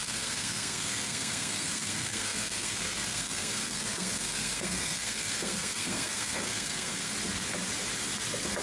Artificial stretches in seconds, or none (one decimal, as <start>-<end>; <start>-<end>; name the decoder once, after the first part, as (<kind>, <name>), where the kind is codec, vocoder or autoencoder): 0.0-7.1 (codec, SNAC)

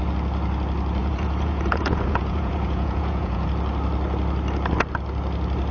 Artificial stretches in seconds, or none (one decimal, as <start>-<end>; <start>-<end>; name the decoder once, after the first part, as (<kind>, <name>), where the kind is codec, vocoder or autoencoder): 1.0-3.5 (vocoder, Vocos)

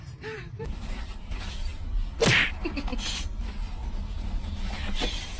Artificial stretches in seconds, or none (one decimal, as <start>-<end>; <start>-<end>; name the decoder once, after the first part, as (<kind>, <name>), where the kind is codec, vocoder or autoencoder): 0.0-1.7 (vocoder, BigVGAN v2); 2.3-2.9; 4.3-5.4

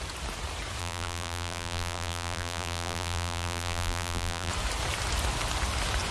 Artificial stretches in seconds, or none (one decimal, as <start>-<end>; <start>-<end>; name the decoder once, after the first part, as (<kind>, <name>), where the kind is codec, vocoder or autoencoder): 0.8-4.5 (vocoder, BigVGAN v2)

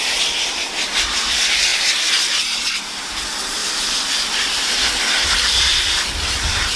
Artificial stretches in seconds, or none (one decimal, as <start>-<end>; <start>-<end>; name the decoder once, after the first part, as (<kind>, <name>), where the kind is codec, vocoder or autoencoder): none

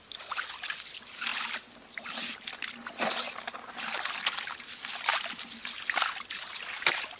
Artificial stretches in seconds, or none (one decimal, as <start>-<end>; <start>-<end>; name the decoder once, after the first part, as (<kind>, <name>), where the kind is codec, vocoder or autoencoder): none